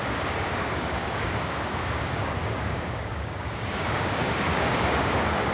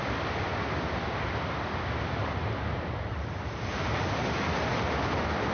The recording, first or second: second